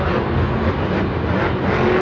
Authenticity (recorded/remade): recorded